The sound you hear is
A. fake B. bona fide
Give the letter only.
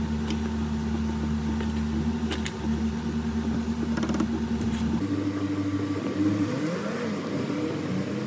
B